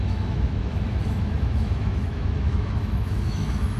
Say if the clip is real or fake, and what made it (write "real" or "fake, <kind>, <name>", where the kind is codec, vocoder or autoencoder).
fake, autoencoder, DAC-VAE